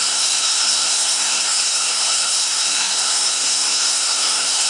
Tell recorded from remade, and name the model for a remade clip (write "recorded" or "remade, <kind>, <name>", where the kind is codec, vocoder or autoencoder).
remade, codec, SNAC